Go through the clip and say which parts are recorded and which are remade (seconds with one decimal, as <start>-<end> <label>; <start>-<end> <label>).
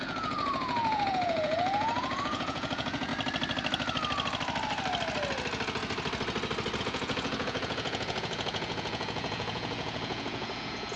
0.0-3.1 remade; 3.1-6.8 recorded; 6.8-11.0 remade